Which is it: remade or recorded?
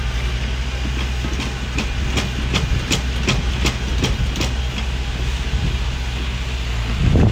recorded